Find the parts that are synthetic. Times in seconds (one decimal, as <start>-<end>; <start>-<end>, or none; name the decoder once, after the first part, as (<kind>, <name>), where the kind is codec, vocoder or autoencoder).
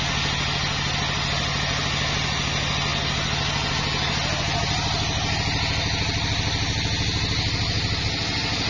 none